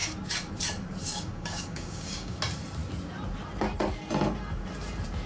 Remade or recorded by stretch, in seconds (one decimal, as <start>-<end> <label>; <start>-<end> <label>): 0.0-1.0 recorded; 1.0-2.4 remade; 2.4-5.3 recorded